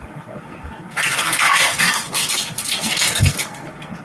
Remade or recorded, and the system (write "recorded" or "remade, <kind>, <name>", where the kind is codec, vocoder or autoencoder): remade, codec, SNAC